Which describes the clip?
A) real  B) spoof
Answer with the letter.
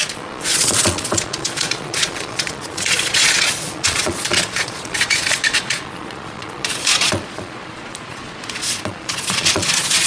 B